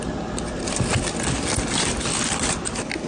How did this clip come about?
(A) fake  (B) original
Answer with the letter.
B